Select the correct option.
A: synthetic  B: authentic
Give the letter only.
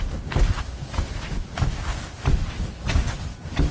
B